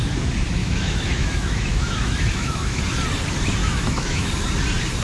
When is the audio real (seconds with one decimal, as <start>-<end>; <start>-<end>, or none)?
0.0-0.6; 2.8-3.6; 4.3-5.0